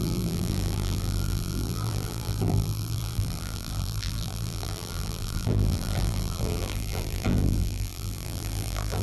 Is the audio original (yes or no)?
no